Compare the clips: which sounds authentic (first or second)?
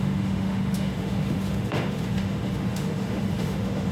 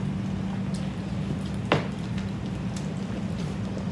second